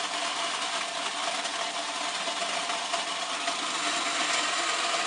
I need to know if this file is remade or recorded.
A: recorded